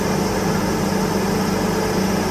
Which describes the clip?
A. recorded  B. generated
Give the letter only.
A